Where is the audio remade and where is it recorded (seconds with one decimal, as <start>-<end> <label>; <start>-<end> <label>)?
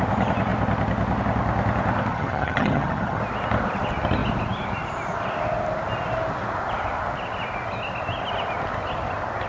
0.0-2.1 recorded; 2.1-3.2 remade; 3.2-9.5 recorded